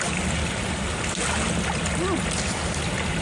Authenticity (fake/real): real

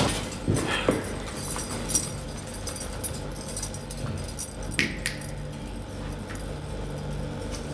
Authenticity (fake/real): real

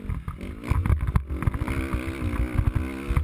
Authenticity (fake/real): real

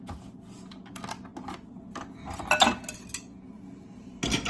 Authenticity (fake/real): real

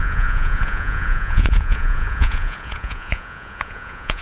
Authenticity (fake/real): fake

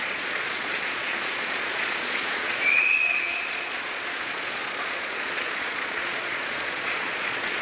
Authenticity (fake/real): fake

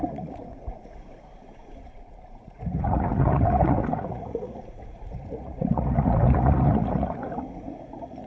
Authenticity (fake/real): fake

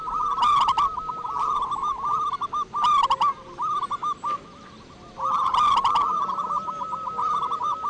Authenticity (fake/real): real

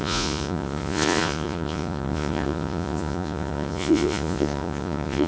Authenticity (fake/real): fake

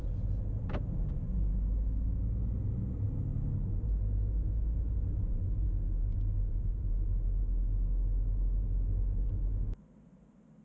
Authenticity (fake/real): real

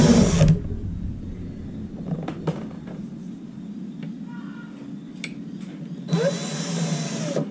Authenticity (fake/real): real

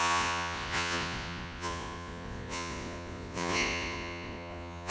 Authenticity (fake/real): fake